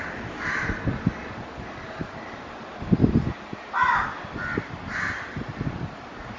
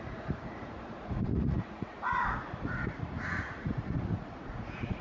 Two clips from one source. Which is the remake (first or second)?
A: second